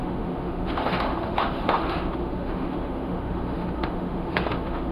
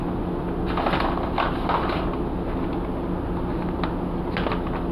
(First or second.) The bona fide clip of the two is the second